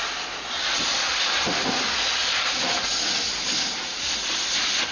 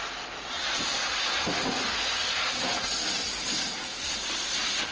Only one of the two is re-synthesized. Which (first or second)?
first